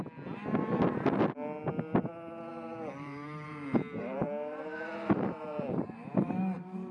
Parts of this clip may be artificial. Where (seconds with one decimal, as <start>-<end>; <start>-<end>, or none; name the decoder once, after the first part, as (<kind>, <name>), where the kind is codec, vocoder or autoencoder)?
2.5-6.9 (vocoder, BigVGAN v2)